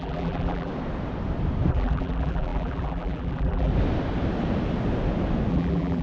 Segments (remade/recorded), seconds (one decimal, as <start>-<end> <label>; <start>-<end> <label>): 0.0-0.7 remade; 0.7-1.7 recorded; 1.7-3.7 remade; 3.7-5.5 recorded; 5.5-6.0 remade